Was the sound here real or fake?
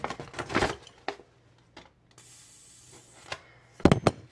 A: real